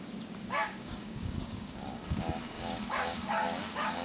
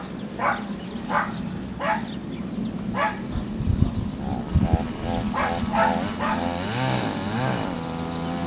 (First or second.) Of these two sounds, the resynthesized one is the first